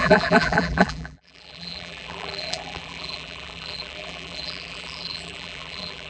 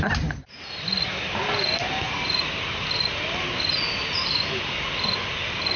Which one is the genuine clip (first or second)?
second